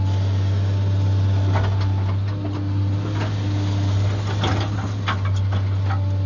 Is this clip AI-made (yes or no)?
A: no